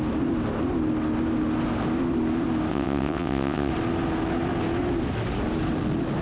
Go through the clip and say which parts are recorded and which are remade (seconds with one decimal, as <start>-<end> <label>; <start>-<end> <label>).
0.0-2.7 recorded; 2.7-3.7 remade; 3.7-6.2 recorded